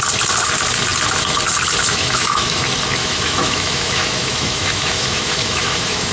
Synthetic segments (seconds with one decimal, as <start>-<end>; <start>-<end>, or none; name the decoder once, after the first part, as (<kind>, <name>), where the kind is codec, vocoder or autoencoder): 1.9-2.6 (autoencoder, DAC-VAE); 3.0-6.1